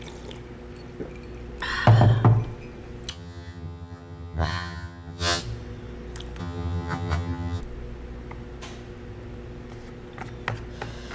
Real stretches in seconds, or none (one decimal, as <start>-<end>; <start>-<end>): 0.0-3.1; 5.4-6.4; 7.6-11.1